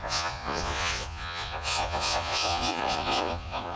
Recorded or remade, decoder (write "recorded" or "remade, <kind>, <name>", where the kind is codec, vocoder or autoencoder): remade, vocoder, Vocos